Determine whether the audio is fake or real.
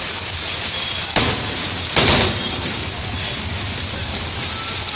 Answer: real